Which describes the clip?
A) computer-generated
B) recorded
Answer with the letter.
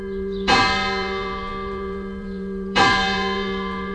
A